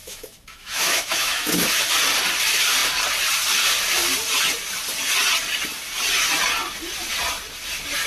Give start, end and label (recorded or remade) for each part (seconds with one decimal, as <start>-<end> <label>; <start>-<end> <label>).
0.0-1.9 remade; 1.9-8.1 recorded